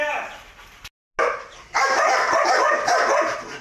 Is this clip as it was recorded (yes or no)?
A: yes